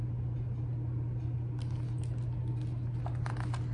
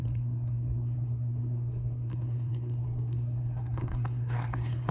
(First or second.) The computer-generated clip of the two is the second